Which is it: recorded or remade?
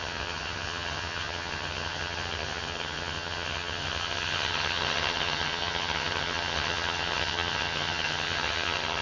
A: remade